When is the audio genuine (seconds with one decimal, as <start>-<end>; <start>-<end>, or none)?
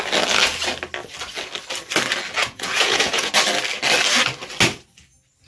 0.0-2.4; 3.3-5.5